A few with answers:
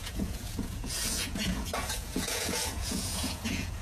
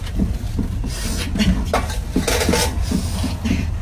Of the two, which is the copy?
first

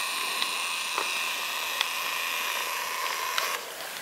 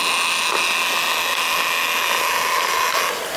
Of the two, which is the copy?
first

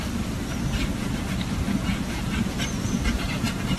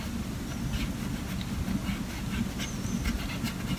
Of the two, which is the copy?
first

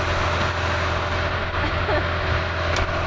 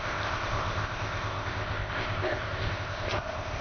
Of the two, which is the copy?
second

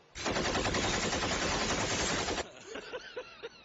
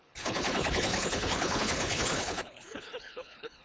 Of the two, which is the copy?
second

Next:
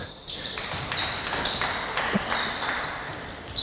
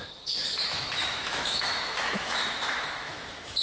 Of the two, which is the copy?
second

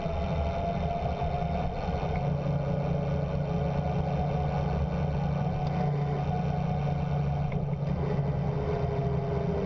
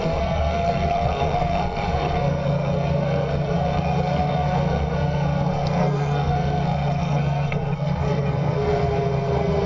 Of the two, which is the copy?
second